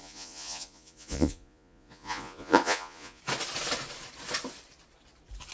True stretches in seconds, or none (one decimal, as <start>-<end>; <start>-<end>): 3.2-5.5